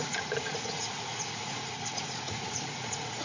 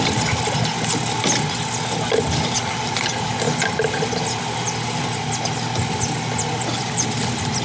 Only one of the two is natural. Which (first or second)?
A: second